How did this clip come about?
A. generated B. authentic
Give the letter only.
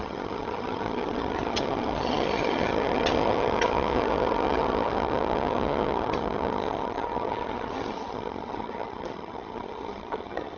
A